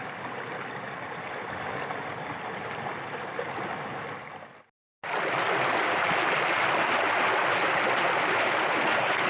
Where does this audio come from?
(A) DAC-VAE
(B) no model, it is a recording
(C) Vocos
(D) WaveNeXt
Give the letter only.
B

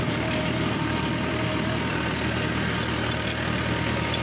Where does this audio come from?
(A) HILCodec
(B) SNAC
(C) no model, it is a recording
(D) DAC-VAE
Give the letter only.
C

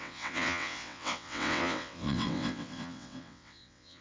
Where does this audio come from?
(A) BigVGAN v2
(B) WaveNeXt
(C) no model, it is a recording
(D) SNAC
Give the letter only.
B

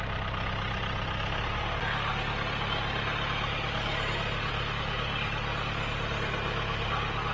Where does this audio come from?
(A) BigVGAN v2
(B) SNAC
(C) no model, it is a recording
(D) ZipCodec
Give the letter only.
C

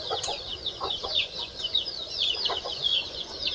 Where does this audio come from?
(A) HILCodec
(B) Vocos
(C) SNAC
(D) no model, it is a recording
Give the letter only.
B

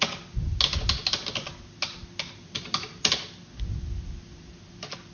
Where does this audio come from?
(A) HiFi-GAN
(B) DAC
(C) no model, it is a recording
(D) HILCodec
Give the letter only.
C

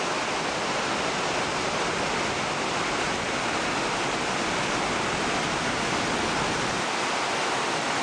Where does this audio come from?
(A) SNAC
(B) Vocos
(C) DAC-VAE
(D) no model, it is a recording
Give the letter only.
D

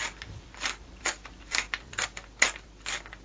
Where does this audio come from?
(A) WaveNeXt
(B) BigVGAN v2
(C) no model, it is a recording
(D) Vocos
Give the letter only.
B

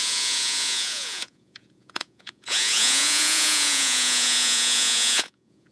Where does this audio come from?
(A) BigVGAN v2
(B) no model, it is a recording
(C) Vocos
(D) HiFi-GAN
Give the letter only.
C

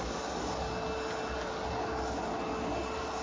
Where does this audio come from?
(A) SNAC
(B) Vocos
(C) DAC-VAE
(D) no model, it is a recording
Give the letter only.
D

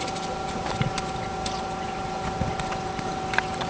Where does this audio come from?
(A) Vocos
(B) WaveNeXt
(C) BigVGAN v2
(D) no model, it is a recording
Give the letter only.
C